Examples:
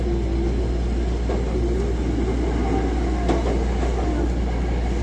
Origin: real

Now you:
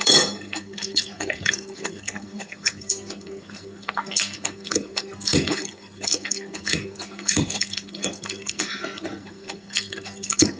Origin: fake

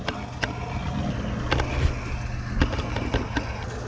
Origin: real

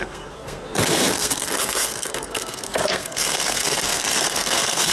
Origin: fake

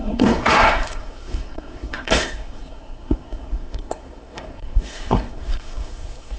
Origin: fake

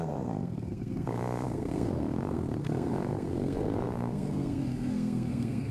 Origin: fake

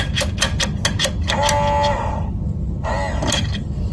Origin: real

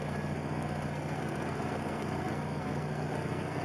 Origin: fake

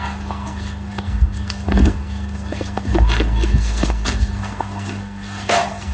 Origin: fake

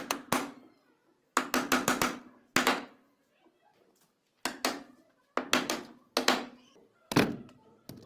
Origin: real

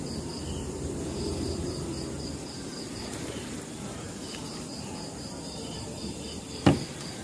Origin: real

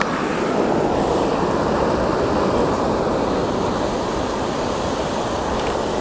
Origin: real